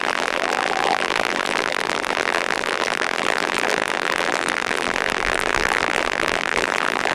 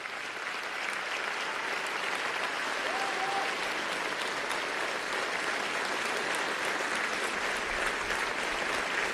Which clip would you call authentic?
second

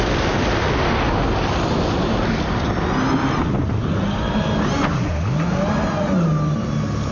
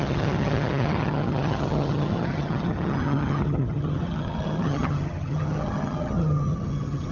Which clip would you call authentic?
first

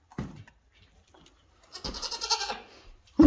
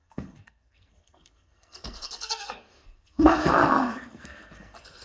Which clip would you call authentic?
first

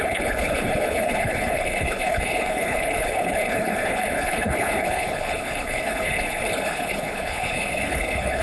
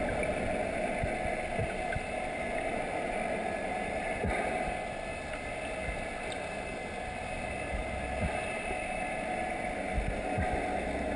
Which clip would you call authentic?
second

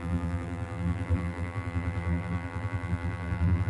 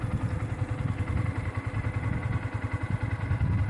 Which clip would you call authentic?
second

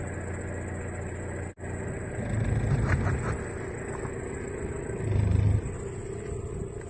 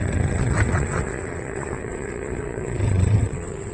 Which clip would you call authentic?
first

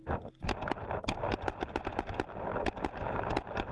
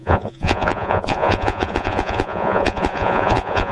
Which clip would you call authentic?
first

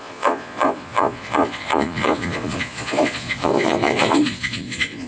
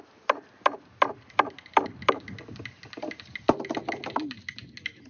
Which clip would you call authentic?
second